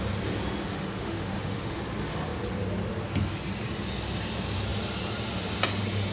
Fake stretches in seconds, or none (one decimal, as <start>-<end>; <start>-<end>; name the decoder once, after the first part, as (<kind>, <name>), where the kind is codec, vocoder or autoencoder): 0.7-1.8 (autoencoder, DAC-VAE)